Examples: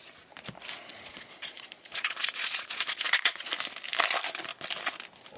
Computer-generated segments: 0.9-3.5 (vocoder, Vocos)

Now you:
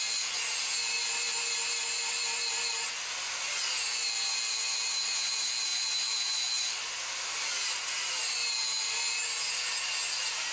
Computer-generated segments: none

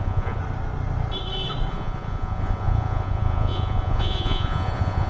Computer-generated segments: 0.0-0.4 (vocoder, Vocos); 1.7-5.1

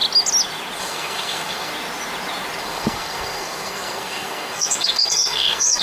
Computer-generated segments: 0.8-1.7 (codec, SNAC); 2.6-5.8

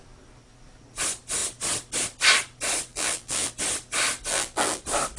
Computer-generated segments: 2.9-3.5 (vocoder, BigVGAN v2); 4.3-4.8

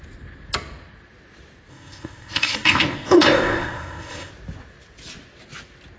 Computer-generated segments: 1.7-4.3 (codec, ZipCodec)

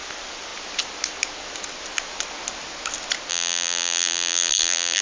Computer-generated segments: 3.3-5.0 (vocoder, BigVGAN v2)

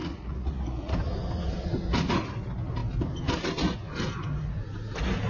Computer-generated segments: 0.0-0.9 (vocoder, Vocos)